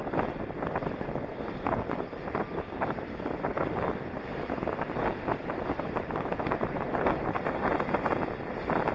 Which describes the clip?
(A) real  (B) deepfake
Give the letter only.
A